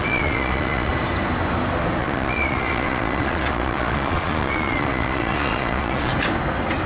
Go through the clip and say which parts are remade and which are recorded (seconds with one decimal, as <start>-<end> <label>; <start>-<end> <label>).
0.0-0.9 remade; 0.9-2.0 recorded; 2.0-6.1 remade; 6.1-6.9 recorded

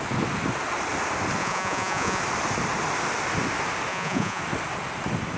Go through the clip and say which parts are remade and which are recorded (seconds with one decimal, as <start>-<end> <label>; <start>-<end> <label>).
0.0-1.4 recorded; 1.4-2.2 remade; 2.2-3.9 recorded; 3.9-4.4 remade; 4.4-5.4 recorded

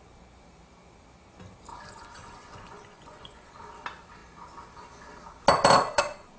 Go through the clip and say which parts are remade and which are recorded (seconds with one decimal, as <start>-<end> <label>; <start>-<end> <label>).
0.0-1.7 recorded; 1.7-3.5 remade; 3.5-6.4 recorded

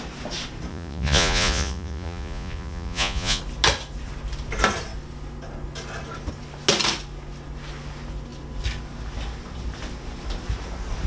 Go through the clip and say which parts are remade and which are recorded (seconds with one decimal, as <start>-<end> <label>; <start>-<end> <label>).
0.0-0.7 recorded; 0.7-3.4 remade; 3.4-11.1 recorded

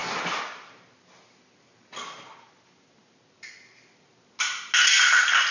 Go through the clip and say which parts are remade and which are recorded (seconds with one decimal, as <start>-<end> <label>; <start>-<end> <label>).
0.0-5.5 recorded

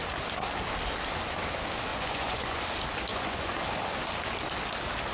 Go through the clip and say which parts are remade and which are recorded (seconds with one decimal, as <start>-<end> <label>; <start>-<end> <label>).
0.0-1.9 recorded; 1.9-2.6 remade; 2.6-3.1 recorded; 3.1-3.6 remade; 3.6-5.1 recorded